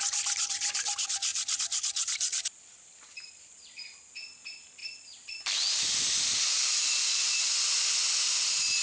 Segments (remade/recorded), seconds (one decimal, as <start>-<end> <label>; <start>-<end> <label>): 0.0-1.3 recorded; 1.3-3.6 remade; 3.6-4.8 recorded; 4.8-8.8 remade